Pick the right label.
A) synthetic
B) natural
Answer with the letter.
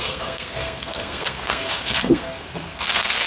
A